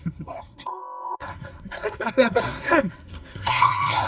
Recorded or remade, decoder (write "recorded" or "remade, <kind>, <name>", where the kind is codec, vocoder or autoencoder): remade, codec, SNAC